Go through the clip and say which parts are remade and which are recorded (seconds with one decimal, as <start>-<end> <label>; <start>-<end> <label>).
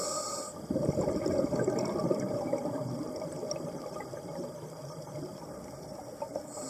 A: 0.0-6.7 remade